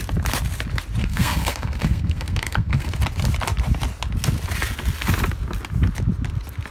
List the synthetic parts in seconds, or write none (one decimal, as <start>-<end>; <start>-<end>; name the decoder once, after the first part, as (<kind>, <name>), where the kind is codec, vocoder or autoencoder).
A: 1.0-2.9 (codec, SNAC)